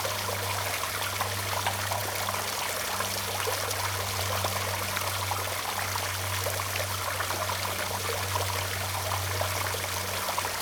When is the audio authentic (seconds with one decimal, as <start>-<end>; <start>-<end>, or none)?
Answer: 0.0-10.6